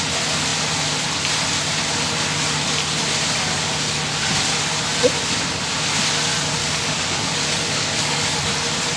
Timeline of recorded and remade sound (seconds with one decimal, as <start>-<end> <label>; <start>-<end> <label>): 0.0-6.6 recorded; 6.6-8.4 remade; 8.4-9.0 recorded